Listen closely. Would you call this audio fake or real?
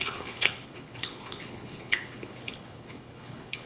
fake